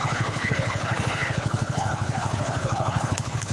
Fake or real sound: fake